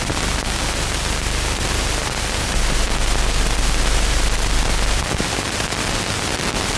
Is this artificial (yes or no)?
yes